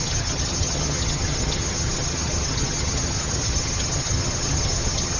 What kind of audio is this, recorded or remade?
remade